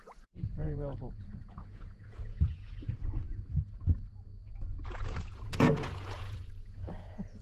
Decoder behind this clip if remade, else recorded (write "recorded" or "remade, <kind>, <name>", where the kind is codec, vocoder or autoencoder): remade, vocoder, Vocos